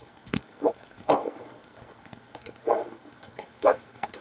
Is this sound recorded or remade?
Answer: remade